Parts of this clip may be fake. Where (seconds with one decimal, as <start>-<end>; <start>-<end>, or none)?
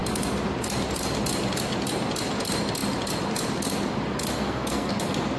4.4-4.9